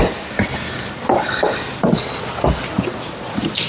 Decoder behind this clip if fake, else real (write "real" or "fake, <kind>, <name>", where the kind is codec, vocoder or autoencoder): real